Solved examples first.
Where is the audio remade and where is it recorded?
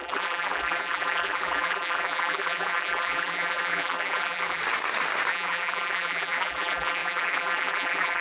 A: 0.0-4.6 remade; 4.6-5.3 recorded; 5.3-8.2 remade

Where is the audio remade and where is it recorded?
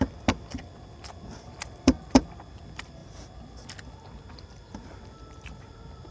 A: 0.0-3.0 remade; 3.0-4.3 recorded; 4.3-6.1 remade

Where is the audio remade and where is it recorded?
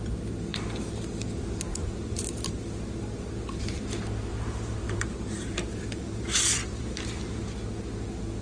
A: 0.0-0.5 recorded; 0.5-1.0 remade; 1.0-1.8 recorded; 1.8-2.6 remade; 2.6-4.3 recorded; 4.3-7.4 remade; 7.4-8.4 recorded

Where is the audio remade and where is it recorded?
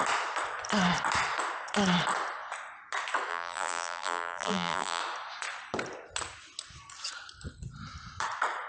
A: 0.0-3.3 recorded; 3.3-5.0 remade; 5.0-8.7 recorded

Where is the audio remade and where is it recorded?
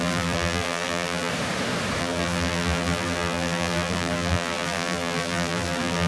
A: 0.0-1.3 remade; 1.3-2.0 recorded; 2.0-6.1 remade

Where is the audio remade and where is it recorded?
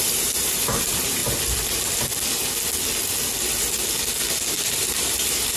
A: 0.0-1.2 remade; 1.2-4.6 recorded; 4.6-5.6 remade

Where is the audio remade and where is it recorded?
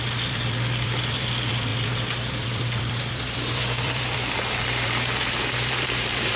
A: 0.0-6.4 remade